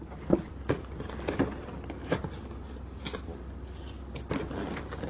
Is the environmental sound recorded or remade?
recorded